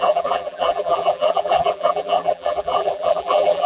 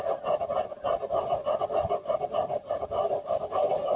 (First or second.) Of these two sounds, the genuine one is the second